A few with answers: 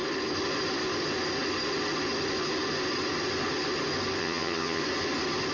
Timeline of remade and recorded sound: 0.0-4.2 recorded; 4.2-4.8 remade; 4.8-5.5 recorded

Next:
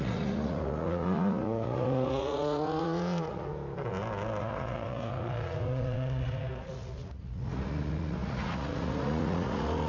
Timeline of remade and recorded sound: 0.0-3.5 remade; 3.5-4.4 recorded; 4.4-9.9 remade

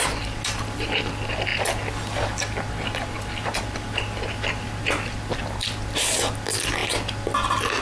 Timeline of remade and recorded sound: 0.0-7.8 recorded

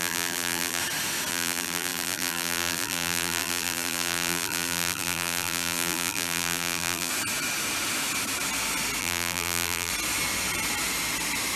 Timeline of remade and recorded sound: 0.0-0.8 remade; 0.8-1.3 recorded; 1.3-7.1 remade; 7.1-9.0 recorded; 9.0-9.9 remade; 9.9-11.6 recorded